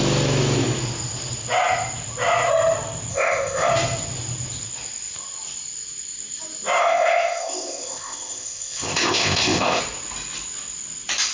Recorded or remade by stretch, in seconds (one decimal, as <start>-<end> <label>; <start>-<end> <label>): 0.0-3.1 recorded; 3.1-3.7 remade; 3.7-6.8 recorded; 6.8-9.8 remade; 9.8-11.3 recorded